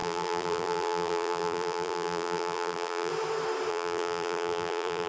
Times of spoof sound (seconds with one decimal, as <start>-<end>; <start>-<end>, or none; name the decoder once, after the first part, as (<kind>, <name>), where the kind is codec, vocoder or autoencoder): 0.0-3.1 (vocoder, BigVGAN v2); 3.7-5.1